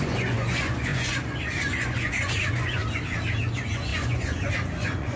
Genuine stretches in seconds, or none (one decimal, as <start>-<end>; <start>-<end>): 2.8-3.4